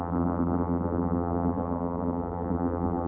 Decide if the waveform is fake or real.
fake